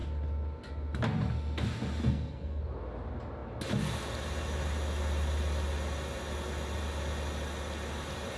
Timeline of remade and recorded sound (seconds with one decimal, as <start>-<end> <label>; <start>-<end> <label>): 0.0-2.0 recorded; 2.0-2.6 remade; 2.6-8.4 recorded